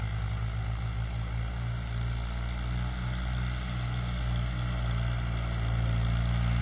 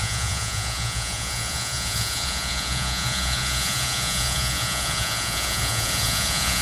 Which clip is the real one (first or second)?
first